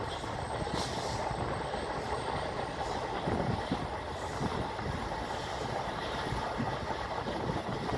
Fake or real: real